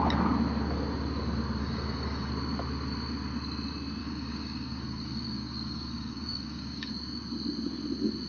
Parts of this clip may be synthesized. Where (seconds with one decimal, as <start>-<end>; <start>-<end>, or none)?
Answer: 1.6-2.3; 4.0-6.9